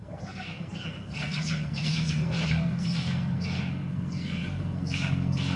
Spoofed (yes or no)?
yes